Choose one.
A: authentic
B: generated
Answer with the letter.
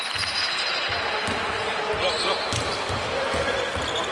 A